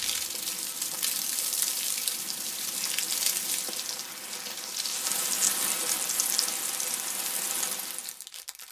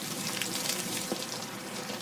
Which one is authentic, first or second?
first